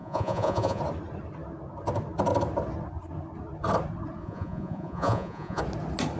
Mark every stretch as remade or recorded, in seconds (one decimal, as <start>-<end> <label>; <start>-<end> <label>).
0.0-0.8 remade; 0.8-4.2 recorded; 4.2-5.6 remade; 5.6-6.2 recorded

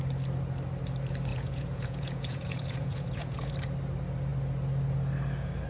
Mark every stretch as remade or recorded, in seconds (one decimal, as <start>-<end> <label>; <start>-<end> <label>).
0.0-1.3 recorded; 1.3-3.5 remade; 3.5-5.7 recorded

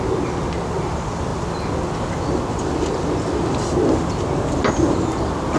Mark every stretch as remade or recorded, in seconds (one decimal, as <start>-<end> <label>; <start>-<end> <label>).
0.0-5.6 recorded